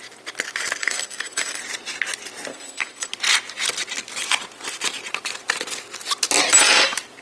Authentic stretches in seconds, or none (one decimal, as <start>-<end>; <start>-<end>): 0.0-0.8; 1.6-2.5; 3.1-7.2